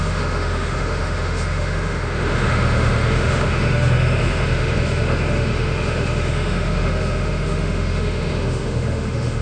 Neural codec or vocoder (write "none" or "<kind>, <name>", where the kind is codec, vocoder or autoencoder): autoencoder, DAC-VAE